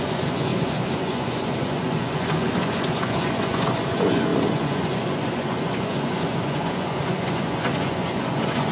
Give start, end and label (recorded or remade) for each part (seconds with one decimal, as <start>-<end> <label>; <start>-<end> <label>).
0.0-8.7 remade